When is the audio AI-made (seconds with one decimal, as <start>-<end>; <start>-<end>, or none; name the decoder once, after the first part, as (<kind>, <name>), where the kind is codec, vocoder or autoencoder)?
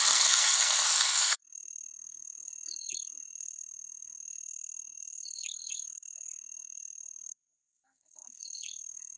0.0-9.2 (codec, SNAC)